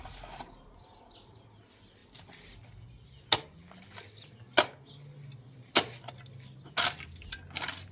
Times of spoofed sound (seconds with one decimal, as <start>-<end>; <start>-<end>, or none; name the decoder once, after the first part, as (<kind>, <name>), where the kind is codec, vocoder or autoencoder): none